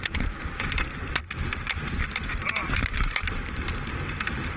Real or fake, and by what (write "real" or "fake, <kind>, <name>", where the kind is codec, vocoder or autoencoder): real